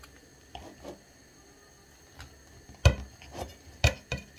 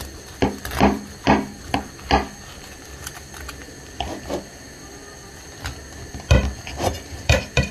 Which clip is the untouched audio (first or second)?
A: first